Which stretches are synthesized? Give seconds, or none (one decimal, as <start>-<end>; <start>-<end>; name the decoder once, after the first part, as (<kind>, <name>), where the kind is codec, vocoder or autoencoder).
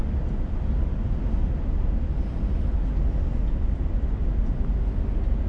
none